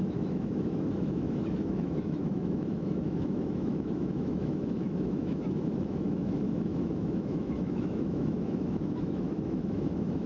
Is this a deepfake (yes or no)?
yes